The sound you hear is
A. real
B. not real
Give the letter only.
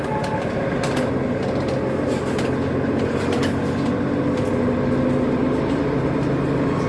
A